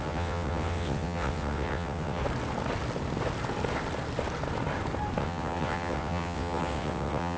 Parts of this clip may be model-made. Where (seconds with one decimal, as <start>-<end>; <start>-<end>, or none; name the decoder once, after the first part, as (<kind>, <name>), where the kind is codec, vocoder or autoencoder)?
0.0-2.2 (vocoder, WaveNeXt); 5.2-7.4